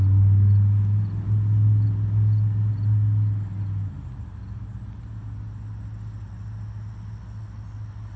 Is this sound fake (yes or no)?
no